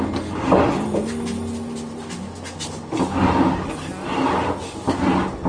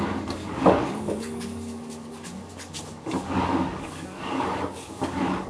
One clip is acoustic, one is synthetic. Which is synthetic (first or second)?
second